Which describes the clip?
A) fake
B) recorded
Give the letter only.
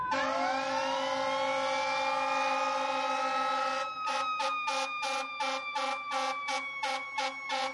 B